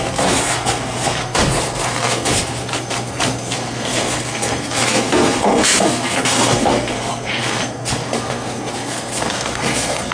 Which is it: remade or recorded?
remade